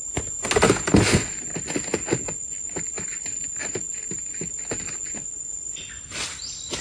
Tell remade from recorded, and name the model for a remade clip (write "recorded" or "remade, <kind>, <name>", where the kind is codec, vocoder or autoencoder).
recorded